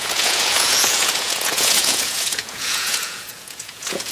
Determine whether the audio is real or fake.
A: fake